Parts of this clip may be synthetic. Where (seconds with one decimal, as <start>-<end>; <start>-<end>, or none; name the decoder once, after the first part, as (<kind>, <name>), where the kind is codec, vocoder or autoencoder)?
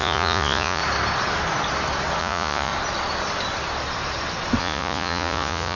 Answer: 0.0-0.8 (vocoder, Vocos); 2.2-2.7; 4.6-5.7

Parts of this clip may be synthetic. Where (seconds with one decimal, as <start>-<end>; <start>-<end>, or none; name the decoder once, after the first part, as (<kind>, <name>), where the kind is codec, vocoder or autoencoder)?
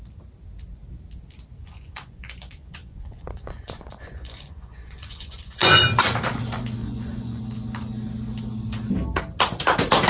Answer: 1.6-5.8 (vocoder, Vocos); 6.8-7.4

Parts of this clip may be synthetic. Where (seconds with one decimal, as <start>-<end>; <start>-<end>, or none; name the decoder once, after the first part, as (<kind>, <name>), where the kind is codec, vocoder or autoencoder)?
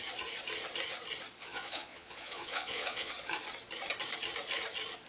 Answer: 1.4-3.1 (vocoder, Vocos)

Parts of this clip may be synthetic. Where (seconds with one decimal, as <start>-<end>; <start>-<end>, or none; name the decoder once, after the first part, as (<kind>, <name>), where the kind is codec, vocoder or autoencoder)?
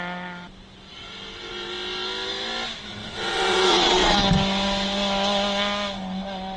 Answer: 3.0-4.2 (vocoder, Vocos)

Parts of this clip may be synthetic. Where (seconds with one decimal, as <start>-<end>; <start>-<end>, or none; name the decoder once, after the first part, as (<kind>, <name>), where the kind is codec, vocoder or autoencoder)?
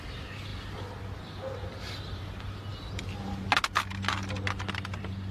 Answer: none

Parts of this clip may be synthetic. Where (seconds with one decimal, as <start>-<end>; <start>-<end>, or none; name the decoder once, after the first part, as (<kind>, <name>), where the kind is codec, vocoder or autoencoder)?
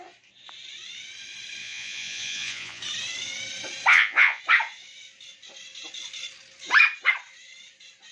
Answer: 1.6-2.8 (vocoder, Vocos); 3.9-4.4